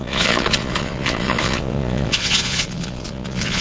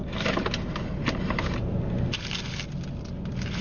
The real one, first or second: second